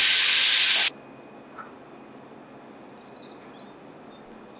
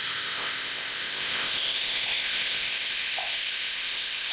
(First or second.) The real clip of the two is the first